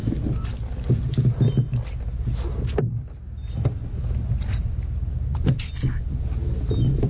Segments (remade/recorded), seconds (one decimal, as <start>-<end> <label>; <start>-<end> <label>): 0.0-7.1 recorded